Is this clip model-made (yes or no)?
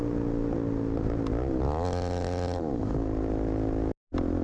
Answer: no